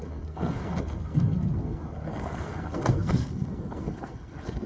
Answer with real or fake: fake